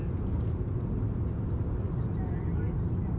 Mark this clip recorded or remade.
recorded